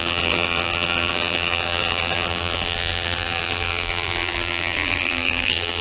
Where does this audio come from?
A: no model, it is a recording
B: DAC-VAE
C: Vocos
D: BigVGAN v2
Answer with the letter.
D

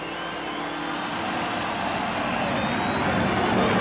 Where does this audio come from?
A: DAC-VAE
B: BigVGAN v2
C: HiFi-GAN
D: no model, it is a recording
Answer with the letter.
D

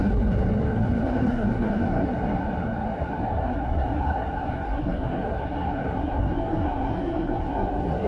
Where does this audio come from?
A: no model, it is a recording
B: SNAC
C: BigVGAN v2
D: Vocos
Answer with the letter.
B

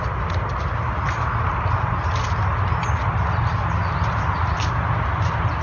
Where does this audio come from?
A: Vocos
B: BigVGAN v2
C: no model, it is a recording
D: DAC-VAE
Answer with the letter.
C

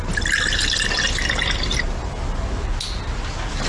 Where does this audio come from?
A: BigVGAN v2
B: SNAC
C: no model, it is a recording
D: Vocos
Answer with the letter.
C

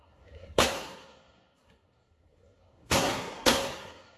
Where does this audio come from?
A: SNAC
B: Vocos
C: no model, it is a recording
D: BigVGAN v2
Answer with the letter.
A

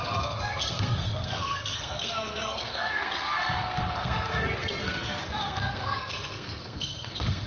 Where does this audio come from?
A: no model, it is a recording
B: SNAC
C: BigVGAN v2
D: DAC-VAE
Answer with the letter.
B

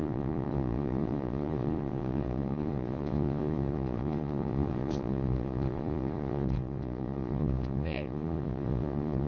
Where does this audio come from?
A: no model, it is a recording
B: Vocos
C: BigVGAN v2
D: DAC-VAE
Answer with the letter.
B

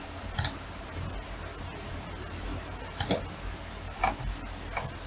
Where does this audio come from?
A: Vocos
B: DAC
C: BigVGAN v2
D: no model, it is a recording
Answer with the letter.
D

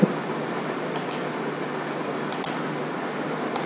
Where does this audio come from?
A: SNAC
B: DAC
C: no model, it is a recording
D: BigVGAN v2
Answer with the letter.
C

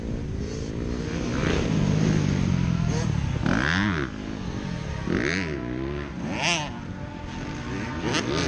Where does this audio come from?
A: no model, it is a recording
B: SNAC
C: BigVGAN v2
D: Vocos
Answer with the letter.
A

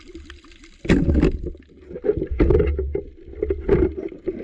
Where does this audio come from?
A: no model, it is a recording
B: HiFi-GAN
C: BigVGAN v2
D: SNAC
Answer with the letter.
A